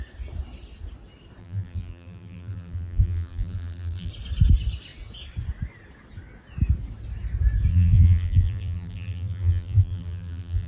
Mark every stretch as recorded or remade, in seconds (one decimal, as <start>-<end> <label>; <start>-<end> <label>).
0.0-1.4 recorded; 1.4-4.1 remade; 4.1-7.7 recorded; 7.7-10.7 remade